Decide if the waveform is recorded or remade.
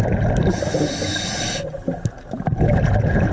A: recorded